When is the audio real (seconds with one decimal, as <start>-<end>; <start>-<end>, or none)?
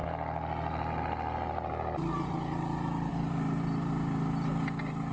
0.0-5.1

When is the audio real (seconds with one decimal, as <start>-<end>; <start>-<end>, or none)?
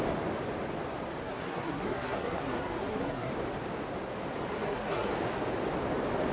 0.0-1.2; 3.3-4.6; 5.1-6.3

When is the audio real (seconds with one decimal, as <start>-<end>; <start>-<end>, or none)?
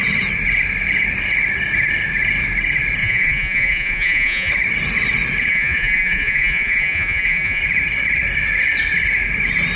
0.0-3.0; 4.5-5.5; 7.6-9.8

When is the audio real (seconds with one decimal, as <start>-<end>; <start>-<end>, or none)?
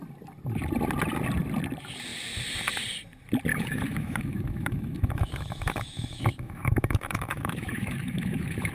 0.0-3.5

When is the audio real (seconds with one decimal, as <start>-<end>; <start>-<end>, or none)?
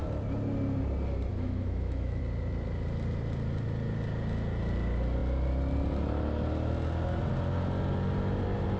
0.0-1.3; 2.2-8.8